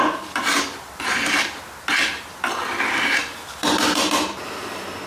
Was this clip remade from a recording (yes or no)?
yes